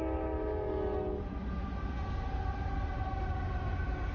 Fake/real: real